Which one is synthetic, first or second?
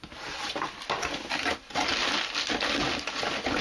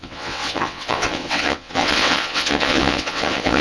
second